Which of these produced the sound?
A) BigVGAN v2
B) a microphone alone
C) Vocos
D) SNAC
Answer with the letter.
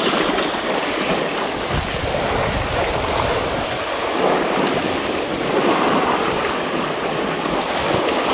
B